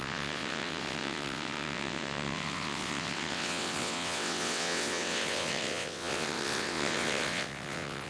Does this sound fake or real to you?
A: fake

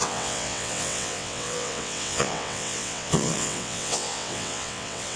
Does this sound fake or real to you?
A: fake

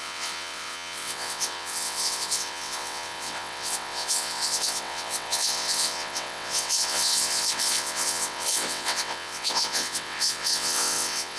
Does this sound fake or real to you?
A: fake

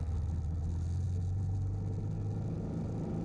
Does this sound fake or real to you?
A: real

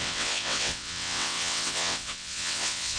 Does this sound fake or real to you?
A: fake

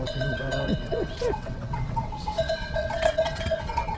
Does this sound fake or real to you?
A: fake